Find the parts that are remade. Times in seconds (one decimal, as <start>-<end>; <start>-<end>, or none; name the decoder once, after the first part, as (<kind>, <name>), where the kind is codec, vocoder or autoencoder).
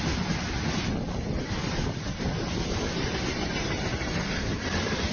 none